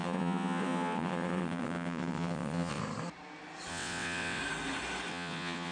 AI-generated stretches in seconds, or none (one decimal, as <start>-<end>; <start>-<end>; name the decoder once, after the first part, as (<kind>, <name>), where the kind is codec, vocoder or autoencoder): 0.0-2.8 (vocoder, WaveNeXt); 3.7-4.4; 5.1-5.7